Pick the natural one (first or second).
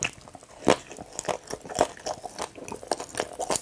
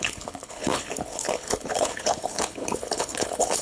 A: first